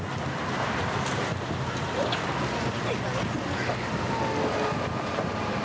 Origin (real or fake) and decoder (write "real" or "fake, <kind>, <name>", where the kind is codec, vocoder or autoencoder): real